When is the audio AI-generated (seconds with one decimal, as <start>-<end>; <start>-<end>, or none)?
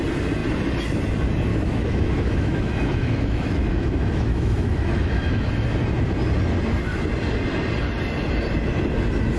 1.5-5.5